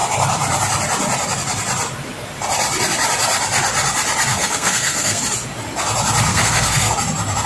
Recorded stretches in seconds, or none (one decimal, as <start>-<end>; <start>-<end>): 0.0-4.3; 5.2-6.3; 6.9-7.5